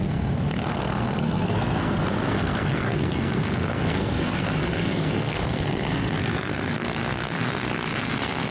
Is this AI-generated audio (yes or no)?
yes